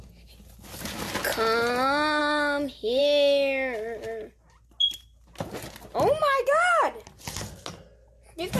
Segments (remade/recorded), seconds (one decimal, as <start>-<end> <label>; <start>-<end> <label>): 0.0-8.6 recorded